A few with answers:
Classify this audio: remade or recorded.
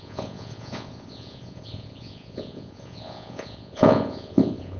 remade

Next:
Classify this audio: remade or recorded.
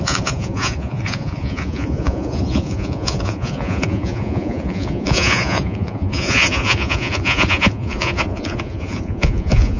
remade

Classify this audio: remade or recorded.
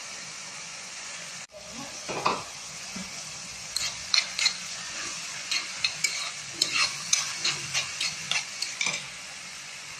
remade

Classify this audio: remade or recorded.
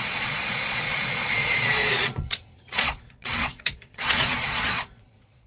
remade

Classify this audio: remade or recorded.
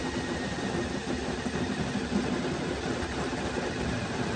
recorded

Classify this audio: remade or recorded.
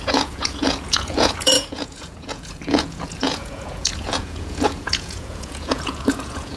remade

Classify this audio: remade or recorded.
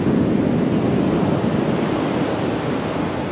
recorded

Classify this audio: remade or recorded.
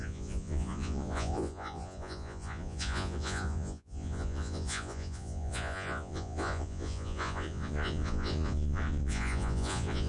remade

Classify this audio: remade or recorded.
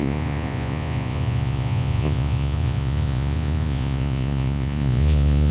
remade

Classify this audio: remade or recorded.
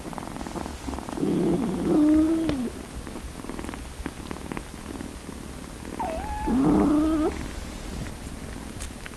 recorded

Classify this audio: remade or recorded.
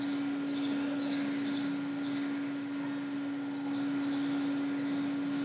recorded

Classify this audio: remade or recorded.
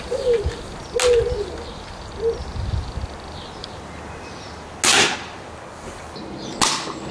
recorded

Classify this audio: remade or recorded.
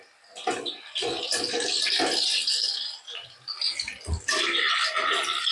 recorded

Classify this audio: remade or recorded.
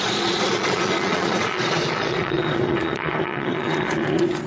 remade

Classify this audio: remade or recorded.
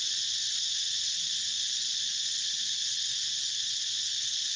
recorded